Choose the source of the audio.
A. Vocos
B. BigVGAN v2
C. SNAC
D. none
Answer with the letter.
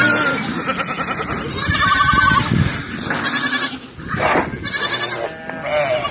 D